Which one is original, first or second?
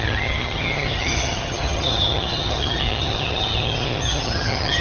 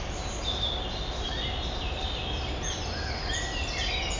second